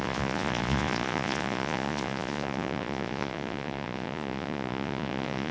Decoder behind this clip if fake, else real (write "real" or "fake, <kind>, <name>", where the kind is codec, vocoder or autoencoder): fake, vocoder, Vocos